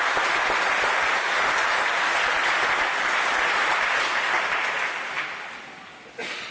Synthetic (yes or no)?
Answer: no